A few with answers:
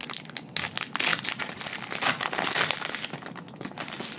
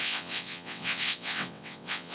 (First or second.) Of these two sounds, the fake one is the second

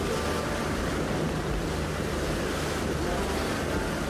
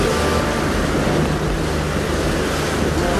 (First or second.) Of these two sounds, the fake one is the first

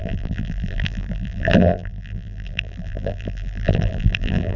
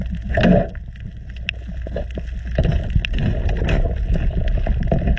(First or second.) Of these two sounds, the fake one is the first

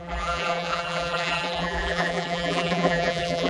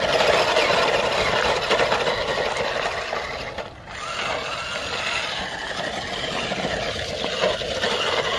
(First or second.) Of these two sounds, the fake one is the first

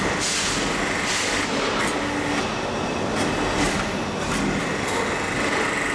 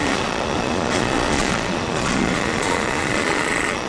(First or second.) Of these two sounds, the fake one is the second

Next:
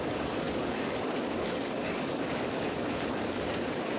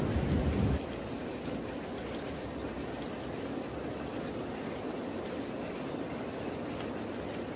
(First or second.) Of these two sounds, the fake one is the first